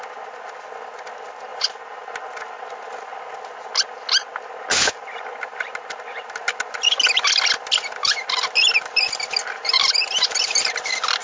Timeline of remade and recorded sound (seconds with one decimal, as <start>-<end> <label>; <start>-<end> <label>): 0.0-11.2 recorded